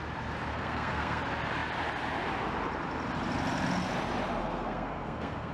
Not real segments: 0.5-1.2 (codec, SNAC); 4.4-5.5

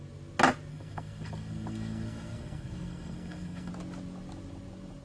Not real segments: 0.7-3.7 (codec, SNAC)